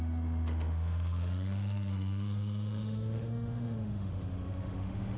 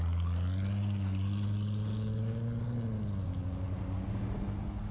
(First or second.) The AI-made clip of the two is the first